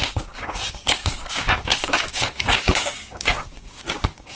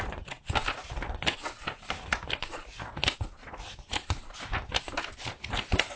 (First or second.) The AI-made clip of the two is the first